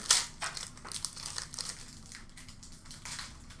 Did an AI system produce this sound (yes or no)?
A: no